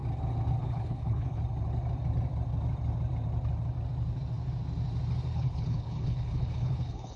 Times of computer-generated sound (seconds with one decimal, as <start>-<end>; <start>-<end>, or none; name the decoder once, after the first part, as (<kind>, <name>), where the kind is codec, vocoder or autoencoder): 0.6-1.4 (codec, HILCodec); 5.3-7.2